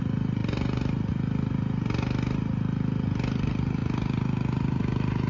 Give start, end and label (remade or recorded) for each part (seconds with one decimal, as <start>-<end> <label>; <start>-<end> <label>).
0.0-5.3 recorded